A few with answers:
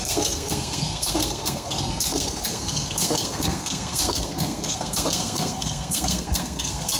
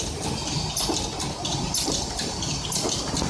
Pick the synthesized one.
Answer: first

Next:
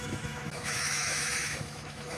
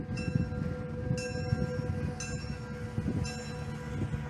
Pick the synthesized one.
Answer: first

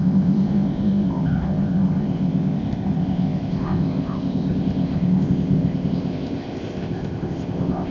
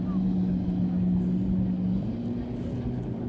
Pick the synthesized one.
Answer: first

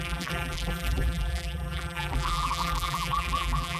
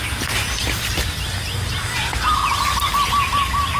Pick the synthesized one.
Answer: first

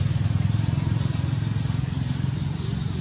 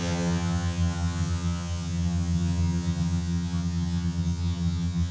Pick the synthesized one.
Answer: second